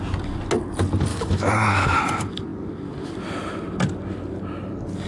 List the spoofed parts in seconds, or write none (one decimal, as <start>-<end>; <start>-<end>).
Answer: 1.1-2.0